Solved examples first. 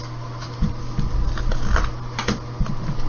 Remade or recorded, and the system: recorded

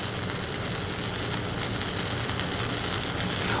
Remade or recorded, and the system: recorded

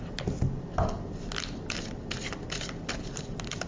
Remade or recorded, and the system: recorded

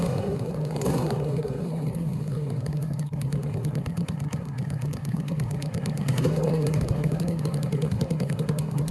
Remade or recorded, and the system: remade, codec, SNAC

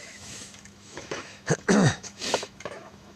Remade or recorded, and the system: remade, autoencoder, DAC-VAE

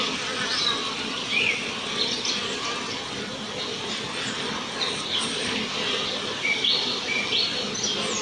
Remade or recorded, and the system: recorded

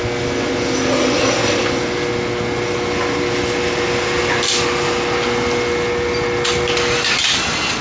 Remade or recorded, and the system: recorded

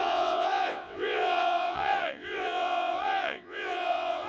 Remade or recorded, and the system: remade, vocoder, WaveNeXt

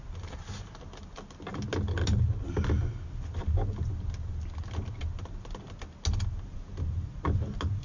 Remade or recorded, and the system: recorded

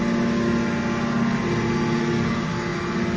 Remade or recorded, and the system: recorded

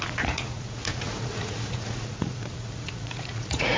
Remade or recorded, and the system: remade, vocoder, Vocos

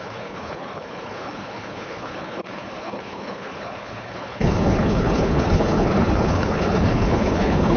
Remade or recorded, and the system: remade, codec, HILCodec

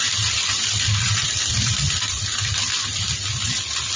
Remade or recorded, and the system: recorded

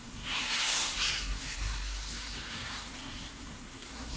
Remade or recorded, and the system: remade, codec, SNAC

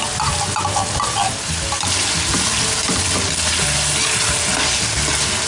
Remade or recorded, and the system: recorded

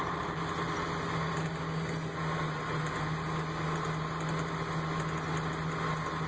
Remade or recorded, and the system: recorded